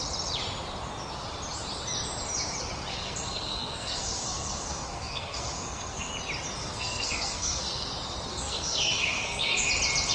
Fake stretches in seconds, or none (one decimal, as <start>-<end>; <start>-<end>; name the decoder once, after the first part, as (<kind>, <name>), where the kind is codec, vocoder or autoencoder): 2.9-6.1 (codec, SNAC); 6.6-7.9; 8.3-9.7